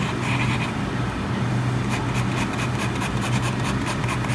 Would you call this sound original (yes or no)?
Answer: yes